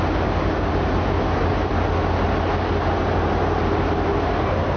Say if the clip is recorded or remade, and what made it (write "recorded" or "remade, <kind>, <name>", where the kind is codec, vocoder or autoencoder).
recorded